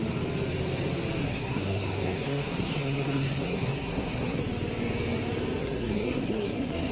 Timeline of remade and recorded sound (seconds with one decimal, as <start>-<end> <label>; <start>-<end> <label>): 0.0-1.2 recorded; 1.2-4.4 remade; 4.4-5.6 recorded; 5.6-6.9 remade